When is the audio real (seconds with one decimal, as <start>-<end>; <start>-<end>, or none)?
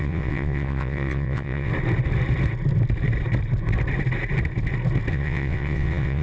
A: 1.7-5.1